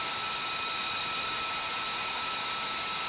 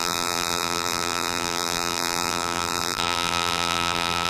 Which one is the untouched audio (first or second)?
first